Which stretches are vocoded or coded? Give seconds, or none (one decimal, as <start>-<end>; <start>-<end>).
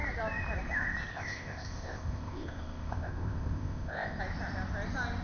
1.1-4.2